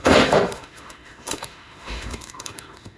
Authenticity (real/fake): fake